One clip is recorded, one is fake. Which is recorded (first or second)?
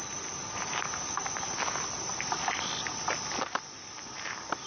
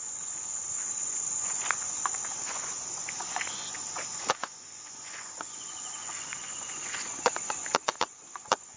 first